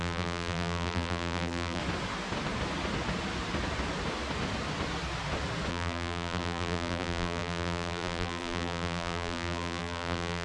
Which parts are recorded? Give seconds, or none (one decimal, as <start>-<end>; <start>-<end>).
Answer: 1.8-5.7

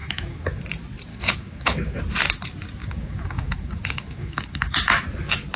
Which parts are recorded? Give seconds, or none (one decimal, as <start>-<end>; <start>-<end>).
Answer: 0.6-1.1; 2.0-2.8; 5.0-5.6

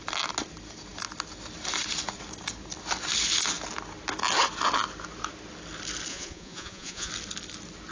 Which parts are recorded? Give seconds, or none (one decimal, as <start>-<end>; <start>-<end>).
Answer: 0.0-6.1; 7.1-7.9

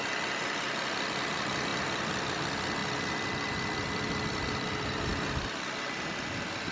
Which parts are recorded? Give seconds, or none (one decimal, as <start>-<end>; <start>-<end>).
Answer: 0.0-6.7

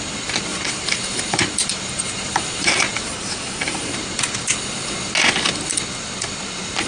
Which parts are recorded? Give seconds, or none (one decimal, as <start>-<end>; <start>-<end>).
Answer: 0.0-0.5; 4.4-6.9

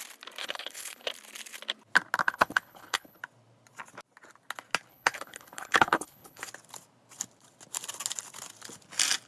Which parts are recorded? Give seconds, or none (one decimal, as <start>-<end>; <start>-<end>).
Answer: 0.0-0.4; 1.1-2.2; 3.2-4.9; 6.5-9.3

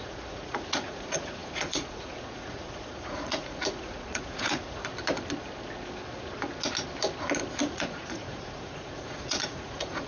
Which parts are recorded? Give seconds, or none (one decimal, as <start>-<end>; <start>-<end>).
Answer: 4.9-7.6